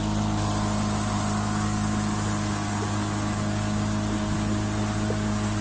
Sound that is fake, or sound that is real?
real